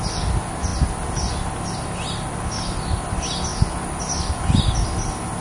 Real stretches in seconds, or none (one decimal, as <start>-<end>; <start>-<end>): 0.0-5.4